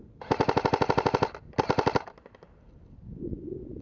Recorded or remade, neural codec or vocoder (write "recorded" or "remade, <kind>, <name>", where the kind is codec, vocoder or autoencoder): recorded